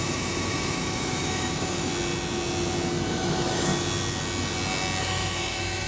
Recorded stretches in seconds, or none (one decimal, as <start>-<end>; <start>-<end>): 1.9-3.1; 3.7-5.0